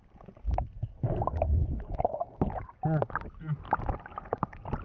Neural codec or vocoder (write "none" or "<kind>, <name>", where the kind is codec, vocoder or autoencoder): none